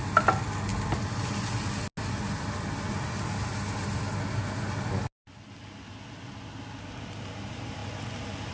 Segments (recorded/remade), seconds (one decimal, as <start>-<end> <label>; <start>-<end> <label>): 0.0-8.5 recorded